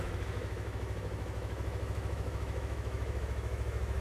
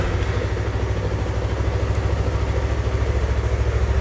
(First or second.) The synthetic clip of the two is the first